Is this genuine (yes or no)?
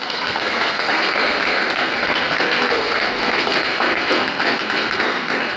no